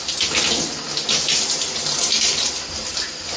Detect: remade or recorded recorded